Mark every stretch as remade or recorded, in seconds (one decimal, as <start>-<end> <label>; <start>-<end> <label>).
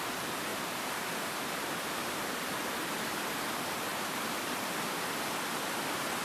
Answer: 0.0-0.5 recorded; 0.5-2.4 remade; 2.4-3.9 recorded; 3.9-4.8 remade; 4.8-6.2 recorded